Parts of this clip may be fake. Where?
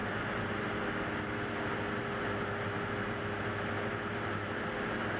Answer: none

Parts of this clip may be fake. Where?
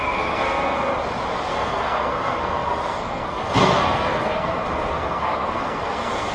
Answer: 0.0-0.9 (codec, SNAC); 1.5-6.3